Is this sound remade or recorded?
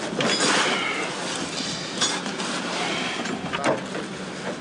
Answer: recorded